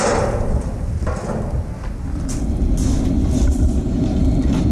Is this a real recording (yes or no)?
yes